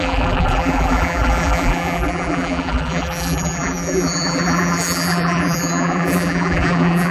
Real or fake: fake